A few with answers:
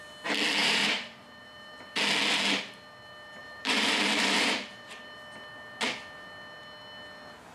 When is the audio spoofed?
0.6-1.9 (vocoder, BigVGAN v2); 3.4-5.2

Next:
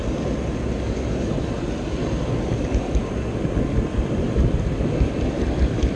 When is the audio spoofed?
3.3-6.0 (vocoder, BigVGAN v2)

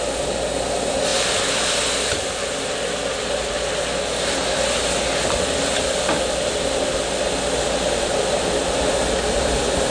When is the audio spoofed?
none

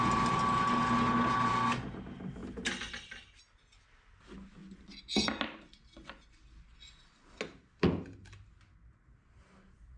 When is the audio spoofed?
none

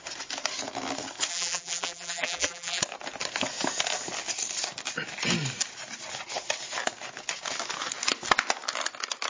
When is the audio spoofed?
1.3-2.8 (vocoder, BigVGAN v2)

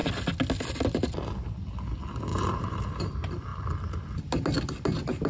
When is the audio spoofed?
2.3-3.0 (vocoder, BigVGAN v2)

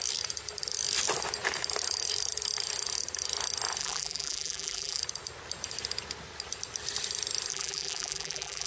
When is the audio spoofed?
3.8-5.0 (vocoder, BigVGAN v2); 7.5-8.7

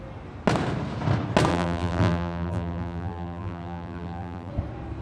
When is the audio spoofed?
1.5-4.5 (vocoder, BigVGAN v2)